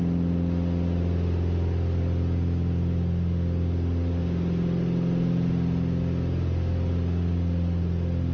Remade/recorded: recorded